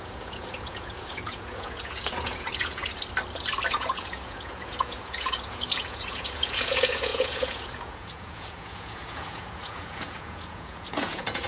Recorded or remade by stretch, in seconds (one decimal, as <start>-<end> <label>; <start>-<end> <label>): 0.0-2.8 remade; 2.8-3.7 recorded; 3.7-11.5 remade